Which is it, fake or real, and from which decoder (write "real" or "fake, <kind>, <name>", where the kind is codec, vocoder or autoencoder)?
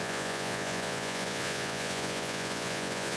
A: fake, vocoder, Vocos